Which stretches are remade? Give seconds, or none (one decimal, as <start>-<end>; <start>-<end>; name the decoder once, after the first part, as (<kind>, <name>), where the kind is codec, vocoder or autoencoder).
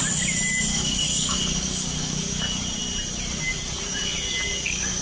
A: 0.7-2.4 (codec, DAC)